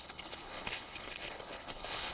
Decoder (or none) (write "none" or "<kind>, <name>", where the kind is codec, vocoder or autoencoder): codec, HILCodec